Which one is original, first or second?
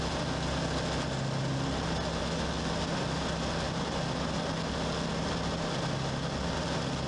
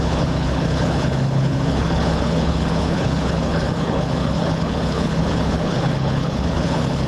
first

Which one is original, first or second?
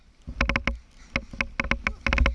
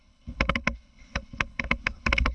first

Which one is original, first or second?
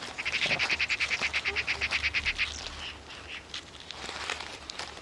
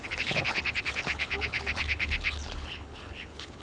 first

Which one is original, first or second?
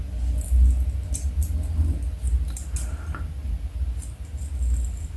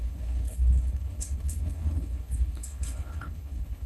first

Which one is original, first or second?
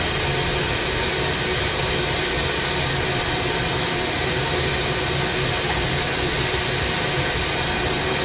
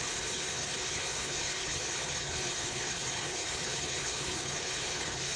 first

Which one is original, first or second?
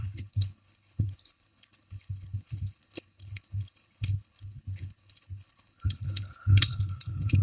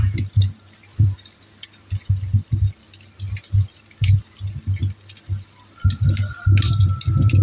second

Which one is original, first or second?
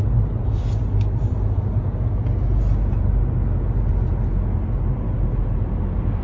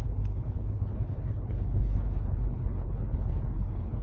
first